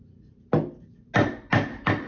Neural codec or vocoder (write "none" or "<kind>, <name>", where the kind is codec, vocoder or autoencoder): none